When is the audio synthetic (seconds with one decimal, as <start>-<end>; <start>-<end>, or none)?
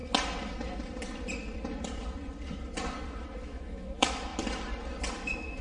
3.4-4.3; 5.1-5.6